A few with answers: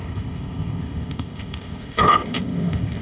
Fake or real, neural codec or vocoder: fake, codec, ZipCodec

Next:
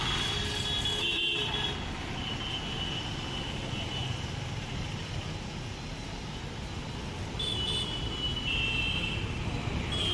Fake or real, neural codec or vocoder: real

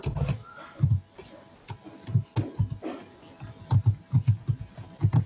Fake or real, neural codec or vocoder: real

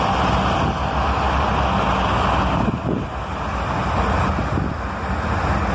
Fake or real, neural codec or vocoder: real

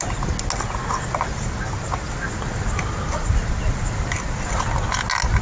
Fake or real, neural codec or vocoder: real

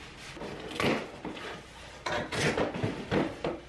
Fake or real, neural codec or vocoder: real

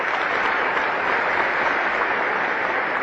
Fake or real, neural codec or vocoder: real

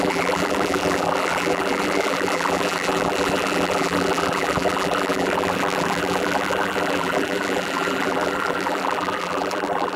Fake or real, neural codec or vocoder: fake, vocoder, BigVGAN v2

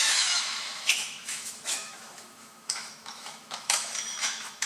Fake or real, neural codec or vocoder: fake, autoencoder, DAC-VAE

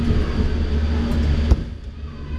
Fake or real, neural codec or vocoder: real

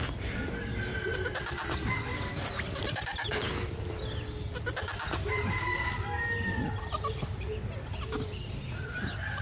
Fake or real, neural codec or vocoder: real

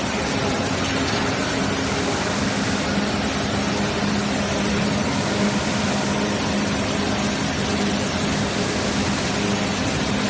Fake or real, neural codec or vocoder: real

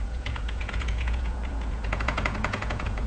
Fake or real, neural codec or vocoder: fake, vocoder, Vocos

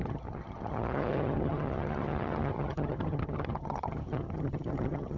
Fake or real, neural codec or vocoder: fake, vocoder, HiFi-GAN